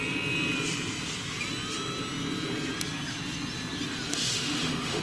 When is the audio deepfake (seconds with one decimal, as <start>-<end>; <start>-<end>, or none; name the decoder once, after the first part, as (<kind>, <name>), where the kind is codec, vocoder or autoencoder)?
4.1-5.0 (autoencoder, DAC-VAE)